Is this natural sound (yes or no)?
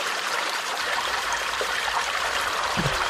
no